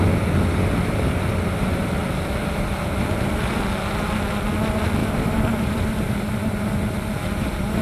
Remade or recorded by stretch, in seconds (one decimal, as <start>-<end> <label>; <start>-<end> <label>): 0.0-5.0 recorded; 5.0-6.2 remade; 6.2-7.8 recorded